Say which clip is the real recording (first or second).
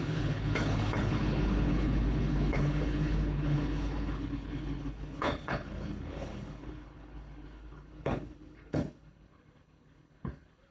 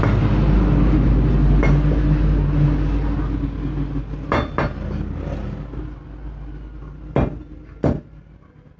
second